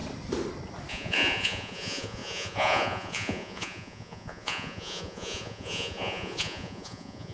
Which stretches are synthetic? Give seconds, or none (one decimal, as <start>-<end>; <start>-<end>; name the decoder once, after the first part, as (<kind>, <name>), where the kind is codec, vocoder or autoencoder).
0.9-7.3 (vocoder, Vocos)